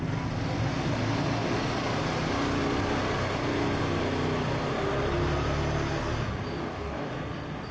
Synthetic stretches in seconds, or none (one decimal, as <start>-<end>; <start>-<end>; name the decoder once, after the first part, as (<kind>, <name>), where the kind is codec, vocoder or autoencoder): 6.6-7.1 (codec, DAC)